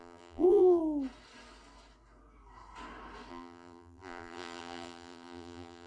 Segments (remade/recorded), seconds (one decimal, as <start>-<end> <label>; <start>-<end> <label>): 0.0-0.8 remade; 0.8-3.3 recorded; 3.3-5.9 remade

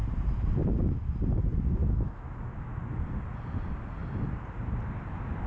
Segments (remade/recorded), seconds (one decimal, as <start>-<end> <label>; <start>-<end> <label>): 0.0-1.8 recorded; 1.8-2.8 remade; 2.8-5.5 recorded